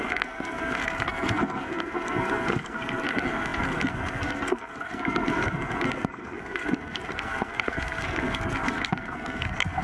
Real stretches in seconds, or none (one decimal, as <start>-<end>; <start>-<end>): none